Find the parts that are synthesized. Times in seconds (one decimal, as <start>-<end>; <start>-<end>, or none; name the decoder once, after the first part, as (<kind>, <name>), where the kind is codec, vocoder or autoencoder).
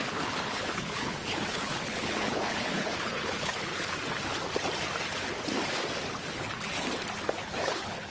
0.0-3.7 (codec, HILCodec); 7.3-8.1